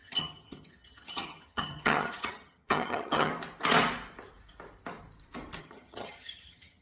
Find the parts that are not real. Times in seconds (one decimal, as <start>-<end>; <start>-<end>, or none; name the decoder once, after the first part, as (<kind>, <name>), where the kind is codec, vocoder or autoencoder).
0.0-3.3 (vocoder, HiFi-GAN); 5.6-6.8